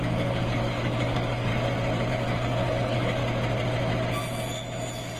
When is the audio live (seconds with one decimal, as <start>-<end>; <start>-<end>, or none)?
1.5-2.1; 3.2-5.2